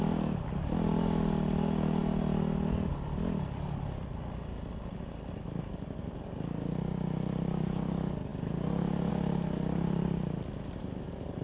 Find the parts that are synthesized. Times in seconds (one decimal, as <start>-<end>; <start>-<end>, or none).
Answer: none